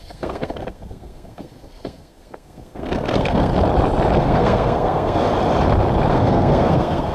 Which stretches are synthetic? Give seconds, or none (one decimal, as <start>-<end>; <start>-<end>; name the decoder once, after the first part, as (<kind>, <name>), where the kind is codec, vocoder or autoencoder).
0.0-3.5 (codec, SNAC); 4.2-5.3; 6.1-7.1